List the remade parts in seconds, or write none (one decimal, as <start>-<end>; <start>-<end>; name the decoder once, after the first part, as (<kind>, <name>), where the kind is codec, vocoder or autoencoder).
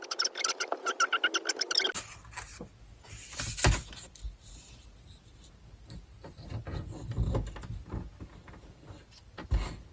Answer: none